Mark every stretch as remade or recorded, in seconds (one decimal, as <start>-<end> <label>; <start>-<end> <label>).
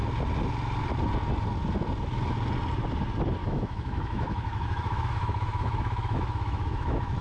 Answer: 0.0-3.4 recorded; 3.4-7.2 remade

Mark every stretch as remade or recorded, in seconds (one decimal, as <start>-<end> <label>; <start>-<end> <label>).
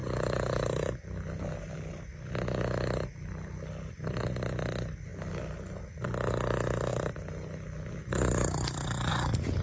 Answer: 0.0-9.6 recorded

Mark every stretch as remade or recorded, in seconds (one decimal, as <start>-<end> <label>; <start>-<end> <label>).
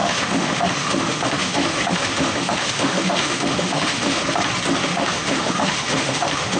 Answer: 0.0-4.2 remade; 4.2-4.8 recorded; 4.8-6.6 remade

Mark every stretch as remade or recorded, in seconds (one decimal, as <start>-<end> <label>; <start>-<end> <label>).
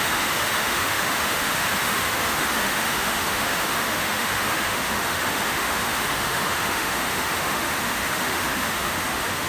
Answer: 0.0-9.5 remade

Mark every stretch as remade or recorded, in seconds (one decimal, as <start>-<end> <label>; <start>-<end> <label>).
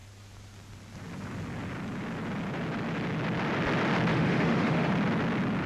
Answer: 0.0-4.1 recorded; 4.1-4.9 remade; 4.9-5.7 recorded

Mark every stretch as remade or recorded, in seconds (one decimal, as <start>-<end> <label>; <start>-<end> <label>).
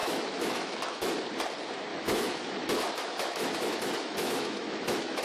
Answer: 0.0-1.1 remade; 1.1-1.9 recorded; 1.9-5.2 remade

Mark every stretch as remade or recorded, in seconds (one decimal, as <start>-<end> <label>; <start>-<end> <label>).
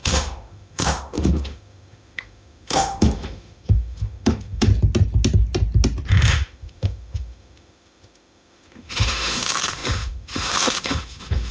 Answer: 0.0-4.7 remade; 4.7-6.1 recorded; 6.1-11.5 remade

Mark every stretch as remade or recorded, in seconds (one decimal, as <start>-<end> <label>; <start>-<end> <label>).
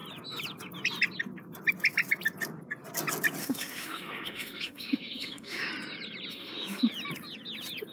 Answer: 0.0-3.4 recorded; 3.4-5.7 remade; 5.7-6.3 recorded; 6.3-6.9 remade; 6.9-7.9 recorded